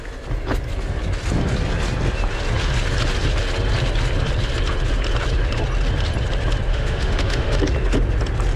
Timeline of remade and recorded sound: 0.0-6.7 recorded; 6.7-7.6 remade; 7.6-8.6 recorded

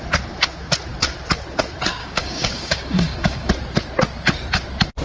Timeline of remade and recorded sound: 0.0-2.0 recorded; 2.0-3.5 remade; 3.5-5.0 recorded

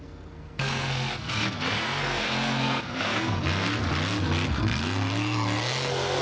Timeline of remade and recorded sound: 0.0-3.8 remade; 3.8-4.5 recorded; 4.5-6.2 remade

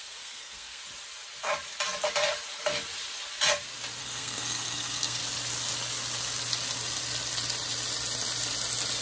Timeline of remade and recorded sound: 0.0-0.8 remade; 0.8-4.0 recorded; 4.0-5.2 remade; 5.2-9.0 recorded

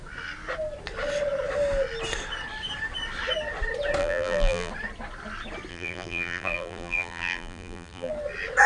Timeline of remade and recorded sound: 0.0-4.0 recorded; 4.0-4.7 remade; 4.7-5.7 recorded; 5.7-8.1 remade; 8.1-8.7 recorded

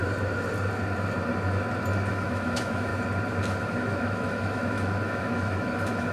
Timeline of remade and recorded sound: 0.0-2.1 recorded; 2.1-2.9 remade; 2.9-3.6 recorded; 3.6-6.1 remade

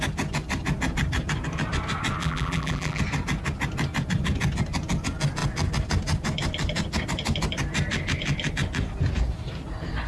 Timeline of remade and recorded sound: 0.0-2.2 recorded; 2.2-3.0 remade; 3.0-10.1 recorded